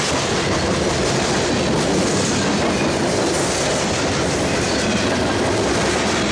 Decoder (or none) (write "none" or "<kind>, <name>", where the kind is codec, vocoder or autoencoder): none